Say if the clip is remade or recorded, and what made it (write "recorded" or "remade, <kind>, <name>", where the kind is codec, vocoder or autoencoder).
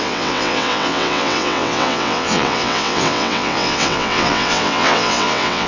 remade, vocoder, WaveNeXt